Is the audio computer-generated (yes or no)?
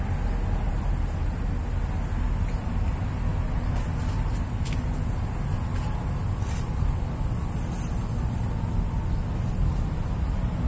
no